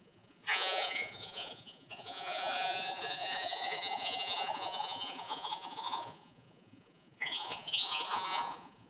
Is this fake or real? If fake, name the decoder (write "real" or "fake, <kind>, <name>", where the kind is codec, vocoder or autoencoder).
fake, vocoder, Vocos